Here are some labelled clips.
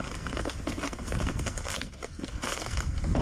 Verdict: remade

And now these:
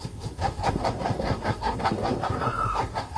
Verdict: remade